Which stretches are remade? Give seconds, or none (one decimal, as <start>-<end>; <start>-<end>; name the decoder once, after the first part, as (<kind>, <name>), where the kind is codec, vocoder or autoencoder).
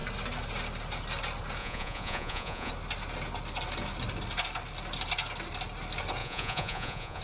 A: 1.6-2.7 (vocoder, Vocos); 6.2-7.2